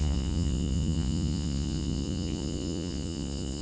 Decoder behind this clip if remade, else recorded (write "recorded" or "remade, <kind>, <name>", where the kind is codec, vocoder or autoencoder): remade, vocoder, Vocos